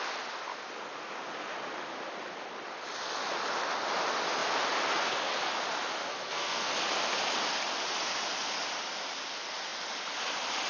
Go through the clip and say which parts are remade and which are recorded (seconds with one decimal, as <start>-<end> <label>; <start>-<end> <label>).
0.0-6.1 recorded; 6.1-6.7 remade; 6.7-10.7 recorded